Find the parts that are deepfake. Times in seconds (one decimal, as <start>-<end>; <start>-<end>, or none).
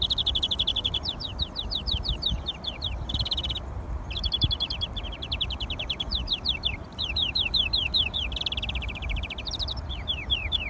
0.0-6.1; 9.5-10.7